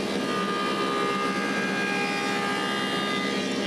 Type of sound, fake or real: real